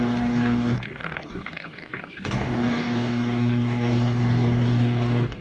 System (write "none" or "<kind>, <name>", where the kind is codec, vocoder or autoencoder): codec, DAC